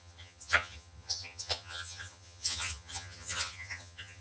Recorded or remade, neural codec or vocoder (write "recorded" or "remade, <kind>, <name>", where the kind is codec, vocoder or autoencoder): remade, vocoder, HiFi-GAN